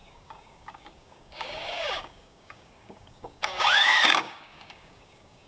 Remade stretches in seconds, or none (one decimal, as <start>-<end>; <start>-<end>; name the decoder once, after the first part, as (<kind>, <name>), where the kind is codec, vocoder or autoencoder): 0.0-5.5 (codec, DAC)